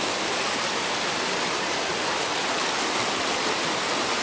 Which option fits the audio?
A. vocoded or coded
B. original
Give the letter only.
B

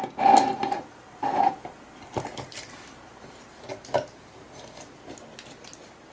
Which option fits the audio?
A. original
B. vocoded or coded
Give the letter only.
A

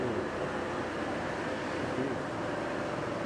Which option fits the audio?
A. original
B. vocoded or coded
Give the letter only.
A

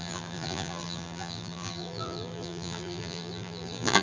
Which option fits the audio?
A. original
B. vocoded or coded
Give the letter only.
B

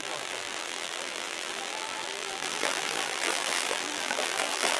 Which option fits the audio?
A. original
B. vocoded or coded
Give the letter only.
B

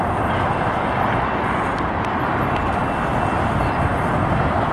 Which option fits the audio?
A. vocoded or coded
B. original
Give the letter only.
B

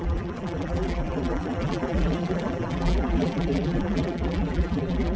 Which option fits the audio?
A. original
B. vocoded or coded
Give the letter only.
B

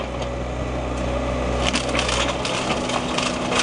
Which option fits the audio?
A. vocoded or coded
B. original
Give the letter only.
B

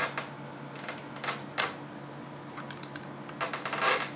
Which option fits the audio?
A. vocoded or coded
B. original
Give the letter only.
B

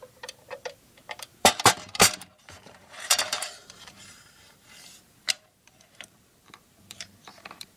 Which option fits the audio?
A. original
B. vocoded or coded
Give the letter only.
B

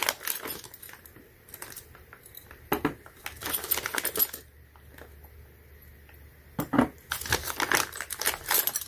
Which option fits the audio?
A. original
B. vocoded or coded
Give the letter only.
A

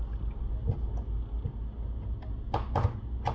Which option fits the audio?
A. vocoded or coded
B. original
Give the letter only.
B